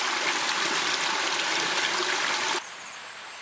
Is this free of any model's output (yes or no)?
yes